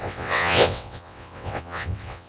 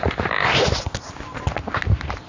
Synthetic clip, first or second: first